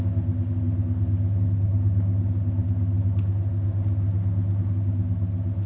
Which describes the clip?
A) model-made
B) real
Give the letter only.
B